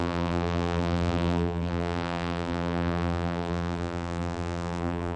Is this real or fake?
fake